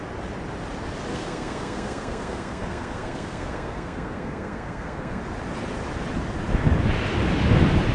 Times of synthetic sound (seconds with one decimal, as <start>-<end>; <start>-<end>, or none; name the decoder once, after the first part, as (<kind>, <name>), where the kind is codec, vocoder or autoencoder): 1.1-5.2 (codec, SNAC)